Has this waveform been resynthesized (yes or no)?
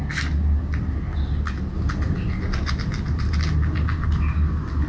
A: no